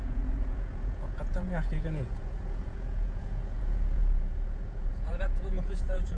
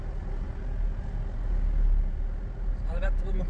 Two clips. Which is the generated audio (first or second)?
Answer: first